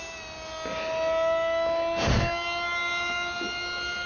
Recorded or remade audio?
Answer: recorded